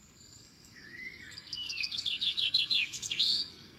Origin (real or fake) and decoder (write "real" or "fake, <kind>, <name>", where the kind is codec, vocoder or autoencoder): fake, codec, SNAC